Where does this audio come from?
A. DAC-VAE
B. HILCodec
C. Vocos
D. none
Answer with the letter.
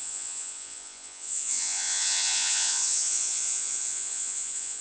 C